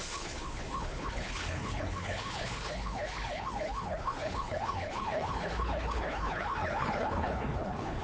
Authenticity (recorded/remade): remade